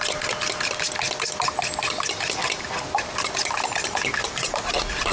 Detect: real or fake real